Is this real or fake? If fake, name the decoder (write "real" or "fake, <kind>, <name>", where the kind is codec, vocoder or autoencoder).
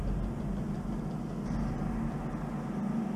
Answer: real